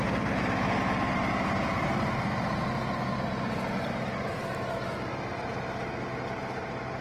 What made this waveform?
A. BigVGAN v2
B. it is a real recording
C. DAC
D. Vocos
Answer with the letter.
B